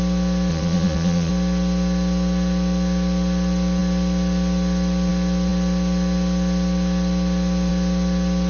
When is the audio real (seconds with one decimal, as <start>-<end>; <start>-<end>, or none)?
0.0-0.5; 1.3-8.5